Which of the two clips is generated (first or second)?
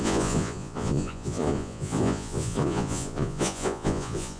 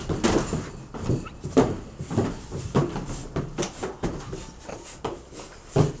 first